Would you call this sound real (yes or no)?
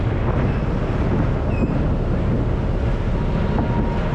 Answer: yes